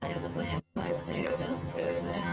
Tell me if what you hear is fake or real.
fake